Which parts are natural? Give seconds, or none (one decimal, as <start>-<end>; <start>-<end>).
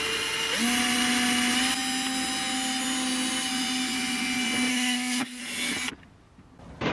0.0-4.7; 5.4-6.9